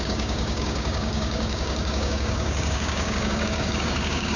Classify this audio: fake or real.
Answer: fake